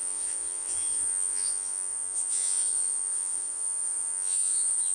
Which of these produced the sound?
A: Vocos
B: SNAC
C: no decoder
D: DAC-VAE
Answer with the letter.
A